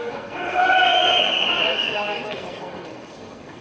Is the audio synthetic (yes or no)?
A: yes